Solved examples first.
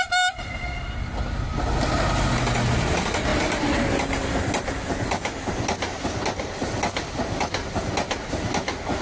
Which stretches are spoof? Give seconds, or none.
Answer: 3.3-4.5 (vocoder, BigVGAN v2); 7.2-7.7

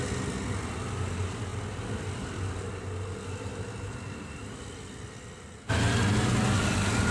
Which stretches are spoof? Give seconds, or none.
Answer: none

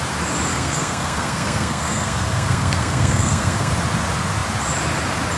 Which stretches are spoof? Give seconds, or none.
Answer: 0.5-3.7 (codec, SNAC)

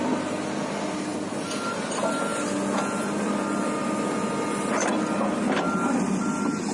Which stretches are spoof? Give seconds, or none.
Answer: none

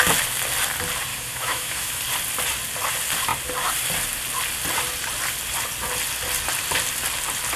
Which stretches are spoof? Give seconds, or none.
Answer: 1.1-2.0 (autoencoder, DAC-VAE)